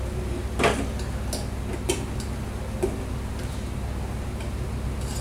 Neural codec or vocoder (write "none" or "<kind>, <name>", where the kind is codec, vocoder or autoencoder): none